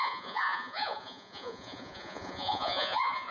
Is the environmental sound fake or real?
fake